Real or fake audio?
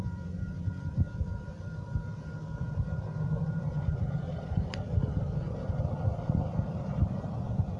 fake